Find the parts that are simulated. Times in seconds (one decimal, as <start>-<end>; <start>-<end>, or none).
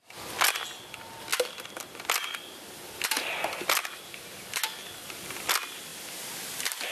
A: none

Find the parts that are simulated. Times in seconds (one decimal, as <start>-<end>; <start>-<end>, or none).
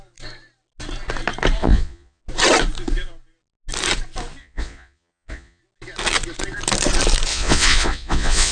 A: 1.6-2.2; 4.4-5.6; 7.3-8.5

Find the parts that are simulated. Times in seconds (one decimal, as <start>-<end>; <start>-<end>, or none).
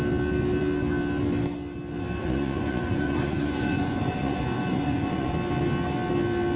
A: 2.2-5.3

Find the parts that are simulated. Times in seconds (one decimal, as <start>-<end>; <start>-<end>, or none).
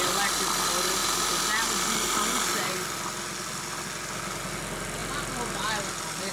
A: none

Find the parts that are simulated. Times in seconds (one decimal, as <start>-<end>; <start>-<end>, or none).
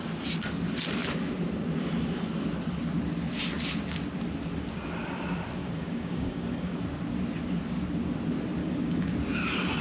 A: 5.6-6.8; 8.6-9.1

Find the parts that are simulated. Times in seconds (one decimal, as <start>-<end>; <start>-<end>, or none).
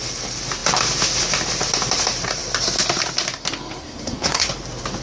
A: 3.8-4.5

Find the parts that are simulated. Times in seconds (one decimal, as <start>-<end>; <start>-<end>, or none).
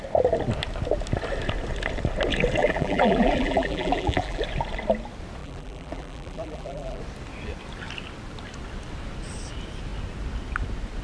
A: 2.6-4.4; 5.4-7.0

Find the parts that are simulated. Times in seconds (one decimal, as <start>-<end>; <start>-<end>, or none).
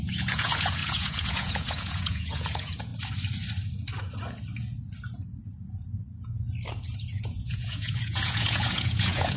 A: 0.0-2.9; 7.2-9.4